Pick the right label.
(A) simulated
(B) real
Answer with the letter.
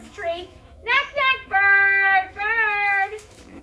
A